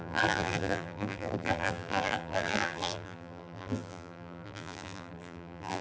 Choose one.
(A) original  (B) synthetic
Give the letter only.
B